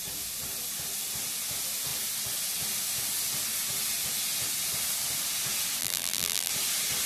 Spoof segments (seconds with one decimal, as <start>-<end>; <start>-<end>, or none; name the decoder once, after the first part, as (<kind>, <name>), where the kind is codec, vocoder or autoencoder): 5.8-6.5 (vocoder, BigVGAN v2)